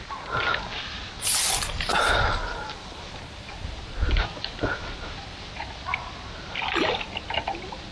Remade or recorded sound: recorded